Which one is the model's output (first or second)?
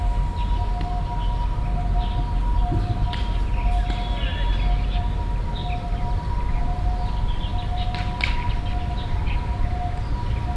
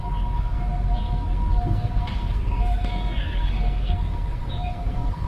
second